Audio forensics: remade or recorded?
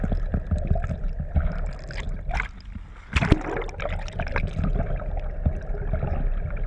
recorded